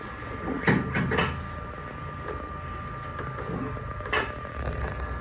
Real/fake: real